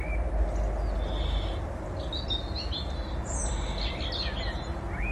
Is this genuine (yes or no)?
yes